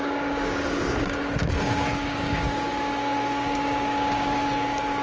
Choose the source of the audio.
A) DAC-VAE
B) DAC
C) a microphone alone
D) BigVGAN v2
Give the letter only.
B